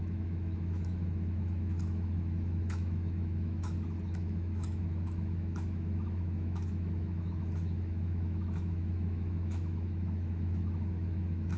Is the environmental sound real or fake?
fake